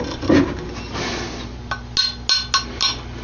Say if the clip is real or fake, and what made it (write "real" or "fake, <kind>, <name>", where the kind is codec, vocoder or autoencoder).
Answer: real